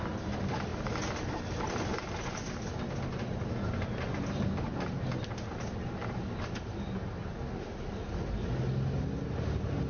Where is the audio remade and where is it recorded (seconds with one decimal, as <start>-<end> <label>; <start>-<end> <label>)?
0.0-9.9 recorded